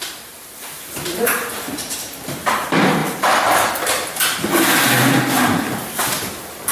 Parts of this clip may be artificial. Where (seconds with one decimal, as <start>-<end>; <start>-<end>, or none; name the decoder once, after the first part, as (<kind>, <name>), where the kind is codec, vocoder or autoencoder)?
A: 0.0-3.0 (vocoder, BigVGAN v2); 6.0-6.7